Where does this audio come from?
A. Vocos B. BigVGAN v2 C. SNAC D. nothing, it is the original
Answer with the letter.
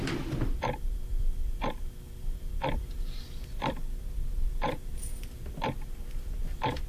B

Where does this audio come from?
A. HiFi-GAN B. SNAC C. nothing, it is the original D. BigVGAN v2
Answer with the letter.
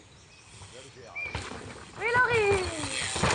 C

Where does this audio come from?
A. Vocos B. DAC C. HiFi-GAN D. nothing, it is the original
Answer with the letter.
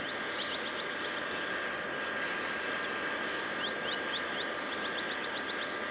D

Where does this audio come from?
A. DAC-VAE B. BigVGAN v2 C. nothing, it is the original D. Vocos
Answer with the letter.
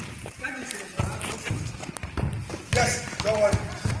C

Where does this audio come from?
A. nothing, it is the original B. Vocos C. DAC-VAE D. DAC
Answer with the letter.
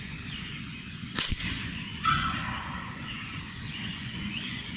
B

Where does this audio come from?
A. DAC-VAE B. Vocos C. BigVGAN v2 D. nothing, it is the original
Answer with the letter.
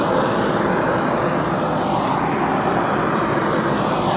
D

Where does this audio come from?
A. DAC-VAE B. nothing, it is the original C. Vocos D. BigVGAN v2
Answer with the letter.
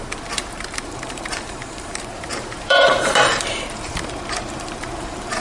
D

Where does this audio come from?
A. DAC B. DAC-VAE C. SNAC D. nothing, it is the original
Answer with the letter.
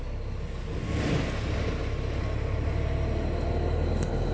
D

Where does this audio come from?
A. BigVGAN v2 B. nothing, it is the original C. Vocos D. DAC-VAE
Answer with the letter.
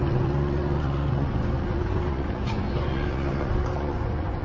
C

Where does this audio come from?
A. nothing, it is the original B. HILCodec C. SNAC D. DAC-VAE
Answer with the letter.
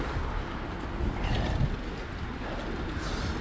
A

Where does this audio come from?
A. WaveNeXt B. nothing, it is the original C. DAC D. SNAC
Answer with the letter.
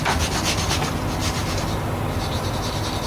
B